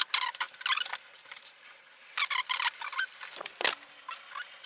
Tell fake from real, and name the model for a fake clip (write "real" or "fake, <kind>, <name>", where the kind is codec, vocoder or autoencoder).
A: real